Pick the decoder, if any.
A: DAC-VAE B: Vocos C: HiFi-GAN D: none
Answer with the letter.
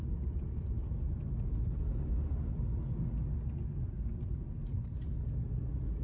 D